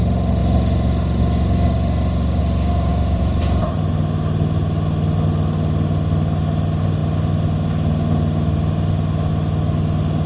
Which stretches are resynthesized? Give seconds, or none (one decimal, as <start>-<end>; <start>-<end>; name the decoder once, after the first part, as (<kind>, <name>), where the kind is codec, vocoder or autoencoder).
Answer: 2.9-3.9 (vocoder, BigVGAN v2)